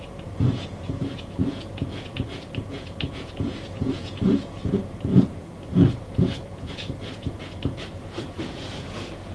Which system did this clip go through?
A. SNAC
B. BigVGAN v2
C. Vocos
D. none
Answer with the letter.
C